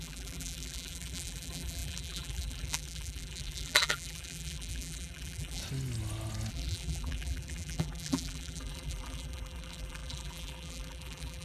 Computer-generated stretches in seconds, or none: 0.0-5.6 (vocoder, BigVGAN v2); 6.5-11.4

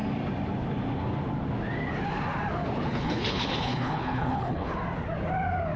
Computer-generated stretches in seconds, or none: 2.9-4.8 (codec, HILCodec)